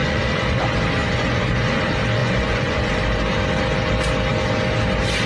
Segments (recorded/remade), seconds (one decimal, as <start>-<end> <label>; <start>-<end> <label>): 0.0-0.6 remade; 0.6-1.0 recorded; 1.0-1.8 remade; 1.8-2.2 recorded; 2.2-2.9 remade; 2.9-5.3 recorded